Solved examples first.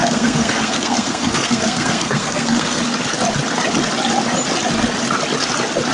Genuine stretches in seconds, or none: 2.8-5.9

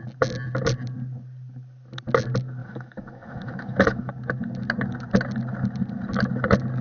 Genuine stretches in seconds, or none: 0.0-2.6; 4.1-6.8

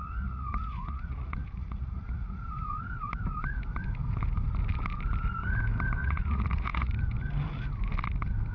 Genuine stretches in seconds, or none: 2.5-6.0; 6.9-8.5